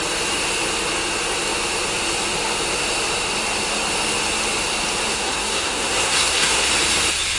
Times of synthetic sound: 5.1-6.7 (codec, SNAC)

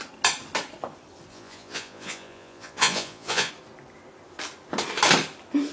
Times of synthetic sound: 1.3-3.5 (vocoder, Vocos)

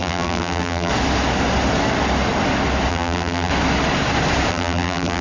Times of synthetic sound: 0.0-0.9 (vocoder, BigVGAN v2); 2.9-3.5; 4.5-5.2

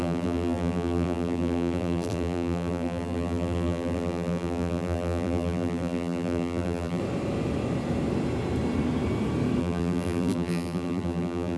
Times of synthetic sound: 0.0-7.0 (vocoder, BigVGAN v2); 9.6-11.6

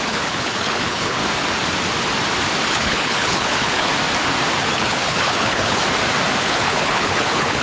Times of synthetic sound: 0.0-1.2 (codec, HILCodec); 2.7-3.9; 4.6-5.8; 6.4-7.6

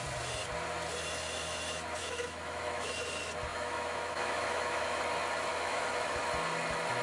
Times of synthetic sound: 2.0-2.9 (autoencoder, DAC-VAE); 3.5-5.0; 5.5-6.2